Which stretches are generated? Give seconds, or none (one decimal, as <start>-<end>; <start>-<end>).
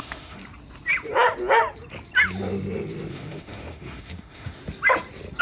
0.0-0.4; 3.1-4.6